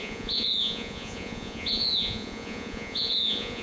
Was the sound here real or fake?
fake